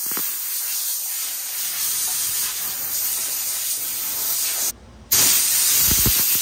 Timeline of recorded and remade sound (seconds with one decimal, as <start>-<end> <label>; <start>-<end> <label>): 0.0-0.9 recorded; 0.9-4.7 remade; 4.7-6.4 recorded